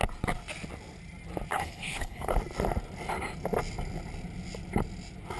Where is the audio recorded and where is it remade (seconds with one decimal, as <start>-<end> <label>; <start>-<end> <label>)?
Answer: 0.0-1.5 recorded; 1.5-2.3 remade; 2.3-5.4 recorded